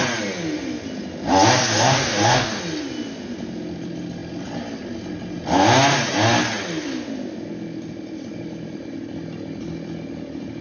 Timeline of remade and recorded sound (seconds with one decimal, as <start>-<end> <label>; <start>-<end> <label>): 0.0-1.7 recorded; 1.7-2.6 remade; 2.6-10.6 recorded